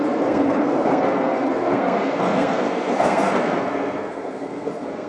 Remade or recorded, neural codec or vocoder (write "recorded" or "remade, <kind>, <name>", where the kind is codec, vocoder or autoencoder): remade, codec, SNAC